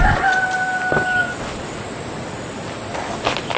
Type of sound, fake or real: real